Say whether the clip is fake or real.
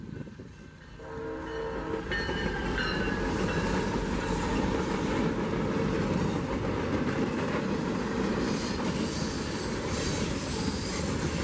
real